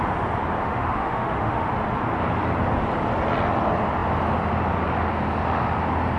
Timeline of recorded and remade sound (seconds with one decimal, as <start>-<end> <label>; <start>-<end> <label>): 0.0-0.6 recorded; 0.6-1.7 remade; 1.7-6.2 recorded